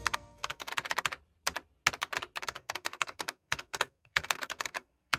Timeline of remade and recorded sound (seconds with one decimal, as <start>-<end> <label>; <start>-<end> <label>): 0.0-0.7 remade; 0.7-2.4 recorded; 2.4-5.2 remade